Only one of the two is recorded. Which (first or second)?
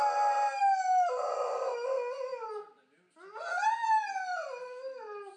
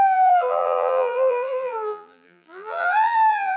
first